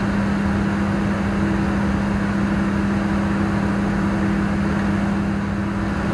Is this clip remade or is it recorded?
recorded